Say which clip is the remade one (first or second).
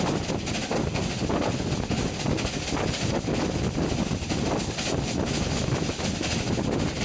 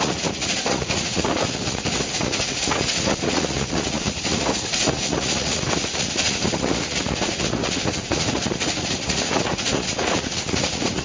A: second